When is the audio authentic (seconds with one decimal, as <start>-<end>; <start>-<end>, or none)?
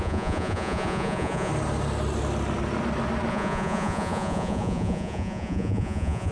1.5-3.3